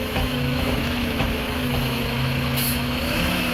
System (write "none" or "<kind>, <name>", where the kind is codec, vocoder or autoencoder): autoencoder, DAC-VAE